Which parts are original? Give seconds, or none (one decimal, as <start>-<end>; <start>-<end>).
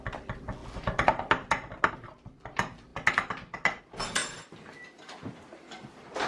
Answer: 0.0-6.3